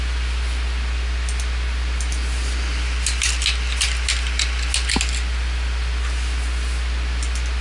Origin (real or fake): real